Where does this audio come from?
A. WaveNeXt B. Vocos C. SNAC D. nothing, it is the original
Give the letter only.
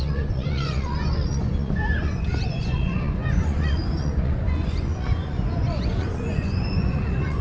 B